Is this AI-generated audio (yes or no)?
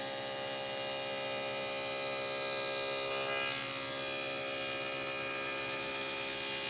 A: no